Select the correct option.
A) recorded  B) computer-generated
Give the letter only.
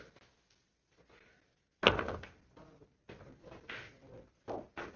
A